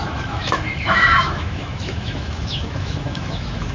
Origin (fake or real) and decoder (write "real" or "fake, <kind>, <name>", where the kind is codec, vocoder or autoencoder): fake, autoencoder, DAC-VAE